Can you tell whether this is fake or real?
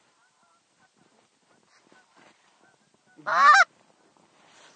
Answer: real